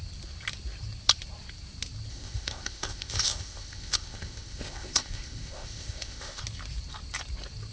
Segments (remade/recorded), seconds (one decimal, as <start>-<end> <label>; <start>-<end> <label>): 0.0-2.1 recorded; 2.1-6.4 remade; 6.4-7.7 recorded